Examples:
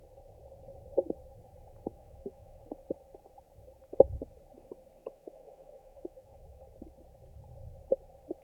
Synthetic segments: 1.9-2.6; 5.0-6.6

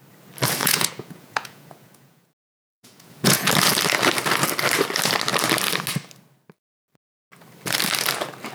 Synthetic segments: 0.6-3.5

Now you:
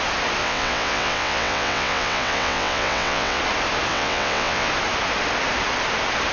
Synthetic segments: 0.4-3.4; 3.9-4.7

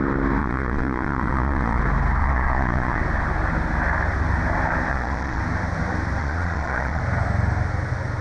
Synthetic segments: 0.4-1.8; 2.2-3.0; 4.9-5.4; 6.2-7.0